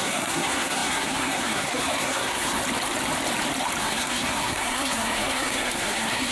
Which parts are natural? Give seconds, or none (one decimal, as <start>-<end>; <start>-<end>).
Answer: 2.6-3.8